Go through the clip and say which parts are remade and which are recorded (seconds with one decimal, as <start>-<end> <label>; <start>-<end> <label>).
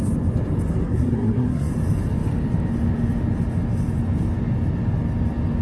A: 0.0-0.8 recorded; 0.8-1.7 remade; 1.7-5.6 recorded